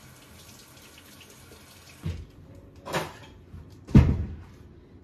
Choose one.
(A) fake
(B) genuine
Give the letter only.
B